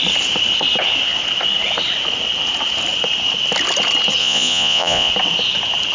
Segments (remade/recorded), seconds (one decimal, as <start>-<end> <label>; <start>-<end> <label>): 0.0-4.2 recorded; 4.2-5.1 remade; 5.1-5.9 recorded